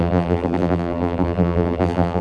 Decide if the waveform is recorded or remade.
remade